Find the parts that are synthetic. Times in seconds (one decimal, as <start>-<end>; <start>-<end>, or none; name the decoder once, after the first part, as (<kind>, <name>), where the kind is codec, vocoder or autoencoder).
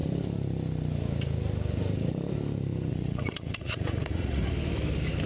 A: 2.9-4.5 (vocoder, Vocos)